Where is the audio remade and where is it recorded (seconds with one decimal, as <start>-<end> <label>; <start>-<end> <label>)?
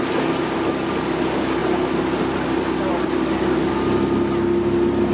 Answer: 0.0-5.1 recorded